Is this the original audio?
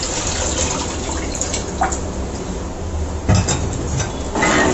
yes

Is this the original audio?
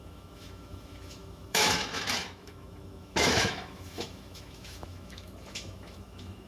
no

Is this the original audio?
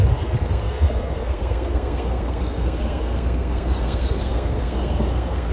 no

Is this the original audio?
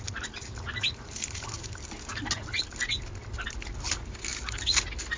yes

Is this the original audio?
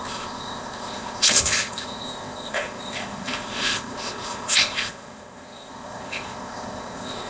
no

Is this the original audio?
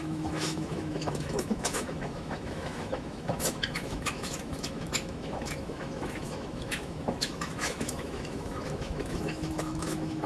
no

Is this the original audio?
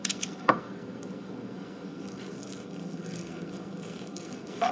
no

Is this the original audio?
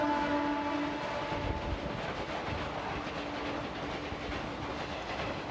yes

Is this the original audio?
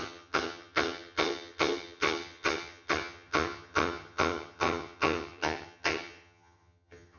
no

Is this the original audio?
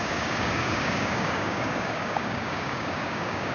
no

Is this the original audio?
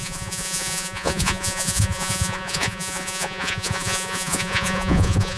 no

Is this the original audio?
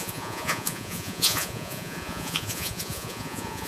no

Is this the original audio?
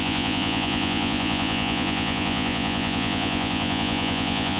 no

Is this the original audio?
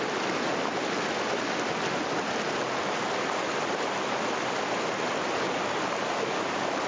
yes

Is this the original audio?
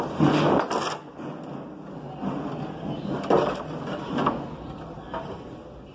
yes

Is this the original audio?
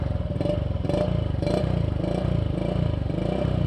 yes